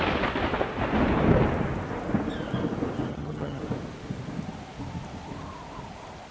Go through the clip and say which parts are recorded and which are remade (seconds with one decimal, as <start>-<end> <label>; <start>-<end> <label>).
0.0-3.1 recorded; 3.1-3.6 remade; 3.6-6.3 recorded